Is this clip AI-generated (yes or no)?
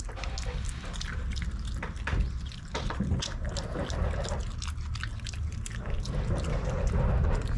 no